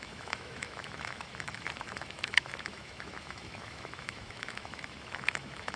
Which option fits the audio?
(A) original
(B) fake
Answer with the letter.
B